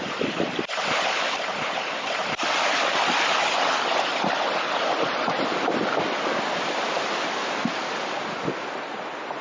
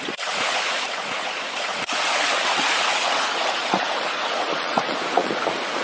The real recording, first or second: first